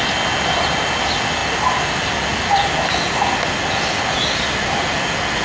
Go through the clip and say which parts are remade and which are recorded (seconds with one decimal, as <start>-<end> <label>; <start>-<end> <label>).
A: 0.0-5.4 recorded